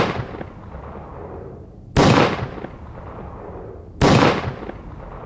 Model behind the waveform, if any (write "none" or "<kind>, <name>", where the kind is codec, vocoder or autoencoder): none